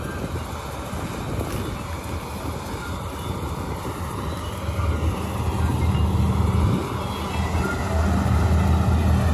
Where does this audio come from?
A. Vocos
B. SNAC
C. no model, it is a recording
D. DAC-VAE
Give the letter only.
C